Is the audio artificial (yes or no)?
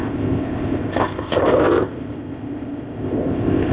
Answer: yes